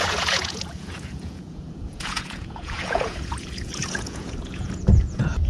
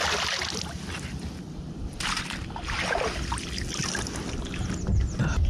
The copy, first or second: first